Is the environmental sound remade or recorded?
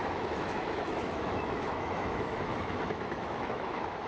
remade